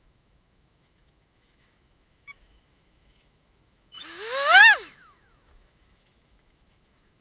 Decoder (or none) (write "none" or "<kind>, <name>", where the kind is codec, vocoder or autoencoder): autoencoder, DAC-VAE